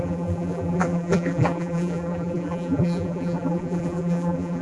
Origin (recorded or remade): remade